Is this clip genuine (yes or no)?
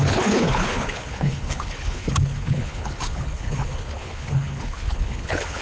no